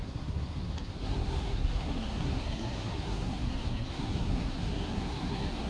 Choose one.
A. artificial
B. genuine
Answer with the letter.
A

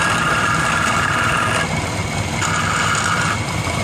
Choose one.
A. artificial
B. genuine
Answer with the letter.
A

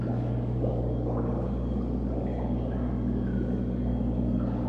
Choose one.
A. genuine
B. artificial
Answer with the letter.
B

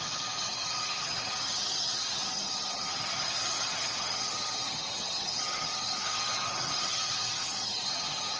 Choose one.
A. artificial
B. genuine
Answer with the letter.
A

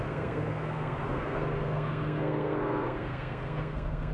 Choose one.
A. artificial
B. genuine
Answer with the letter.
A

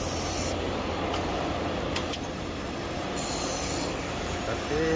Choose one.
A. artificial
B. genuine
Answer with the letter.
B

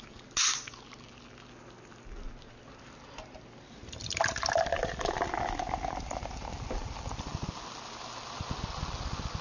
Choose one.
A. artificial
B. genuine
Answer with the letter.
B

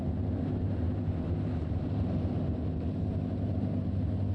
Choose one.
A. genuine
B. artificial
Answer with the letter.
A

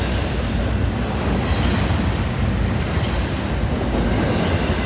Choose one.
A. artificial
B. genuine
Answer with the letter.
B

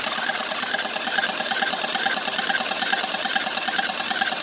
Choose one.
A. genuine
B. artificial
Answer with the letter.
A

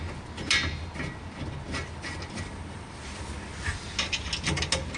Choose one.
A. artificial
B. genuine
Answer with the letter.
B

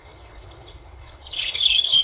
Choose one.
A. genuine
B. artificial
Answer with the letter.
B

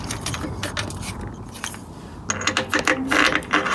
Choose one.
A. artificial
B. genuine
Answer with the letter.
B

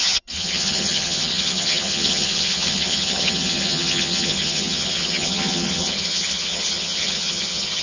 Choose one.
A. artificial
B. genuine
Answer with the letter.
A